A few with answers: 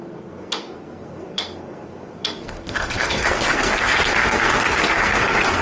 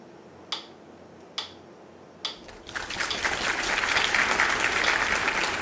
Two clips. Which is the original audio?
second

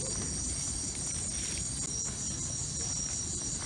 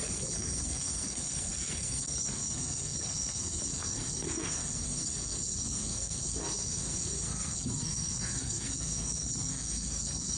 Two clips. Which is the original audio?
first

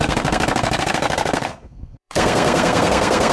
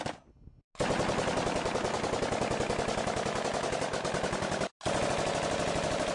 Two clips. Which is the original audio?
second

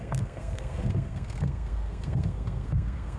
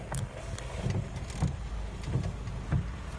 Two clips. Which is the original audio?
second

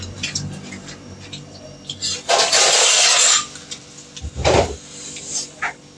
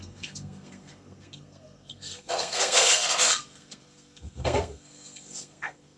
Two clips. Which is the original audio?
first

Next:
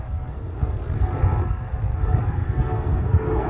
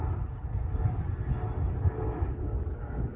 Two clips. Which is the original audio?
second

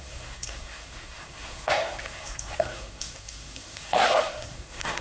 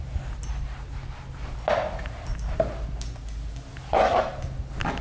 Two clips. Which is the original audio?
second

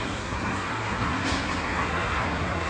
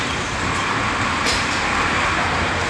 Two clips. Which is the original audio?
second